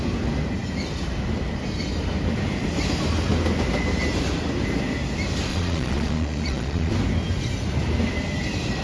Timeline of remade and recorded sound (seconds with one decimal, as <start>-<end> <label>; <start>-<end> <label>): 0.0-5.5 recorded; 5.5-6.9 remade; 6.9-8.8 recorded